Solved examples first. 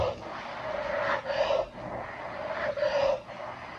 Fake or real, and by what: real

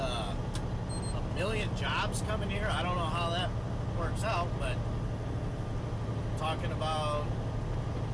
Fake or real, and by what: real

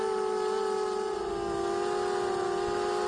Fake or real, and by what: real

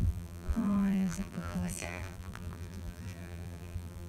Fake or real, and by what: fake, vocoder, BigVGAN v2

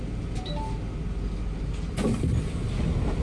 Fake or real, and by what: real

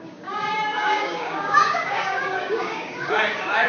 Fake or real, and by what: fake, codec, DAC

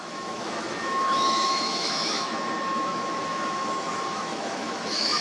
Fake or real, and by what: fake, autoencoder, DAC-VAE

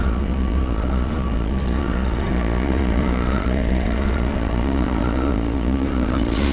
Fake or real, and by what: fake, vocoder, Vocos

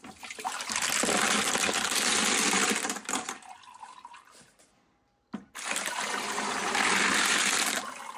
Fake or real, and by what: real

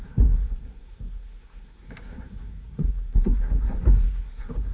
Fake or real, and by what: fake, codec, SNAC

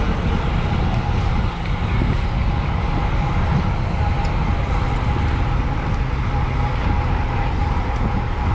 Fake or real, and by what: real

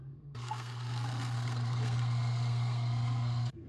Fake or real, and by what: fake, codec, SNAC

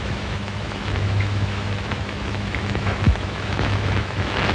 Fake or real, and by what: fake, autoencoder, DAC-VAE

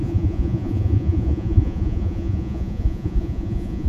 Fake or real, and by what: fake, vocoder, Vocos